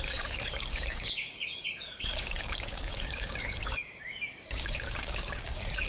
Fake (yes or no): yes